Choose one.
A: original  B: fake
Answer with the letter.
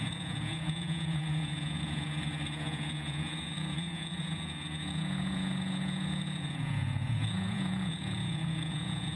B